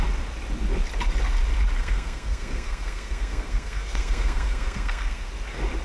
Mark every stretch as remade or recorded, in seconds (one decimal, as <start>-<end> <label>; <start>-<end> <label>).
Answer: 0.0-1.8 recorded; 1.8-5.3 remade; 5.3-5.8 recorded